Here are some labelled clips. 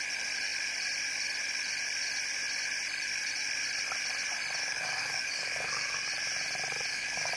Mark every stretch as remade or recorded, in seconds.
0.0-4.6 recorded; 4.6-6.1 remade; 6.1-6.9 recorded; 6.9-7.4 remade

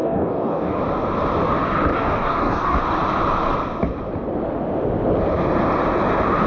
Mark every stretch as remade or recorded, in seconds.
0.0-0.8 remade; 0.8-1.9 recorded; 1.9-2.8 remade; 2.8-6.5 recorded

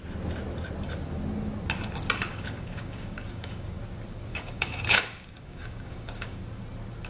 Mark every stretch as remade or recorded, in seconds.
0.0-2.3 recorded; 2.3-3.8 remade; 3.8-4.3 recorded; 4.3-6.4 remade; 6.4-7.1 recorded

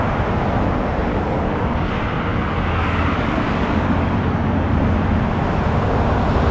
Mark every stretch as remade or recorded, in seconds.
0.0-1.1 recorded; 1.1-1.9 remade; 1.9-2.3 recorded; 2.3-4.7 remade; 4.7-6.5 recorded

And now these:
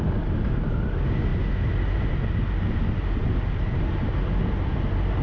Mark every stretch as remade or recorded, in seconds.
0.0-5.2 recorded

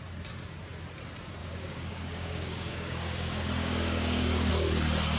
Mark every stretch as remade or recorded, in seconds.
0.0-1.4 recorded; 1.4-4.5 remade; 4.5-5.2 recorded

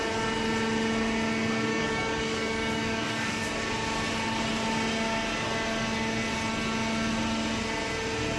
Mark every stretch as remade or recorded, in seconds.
0.0-1.7 recorded; 1.7-3.4 remade; 3.4-8.4 recorded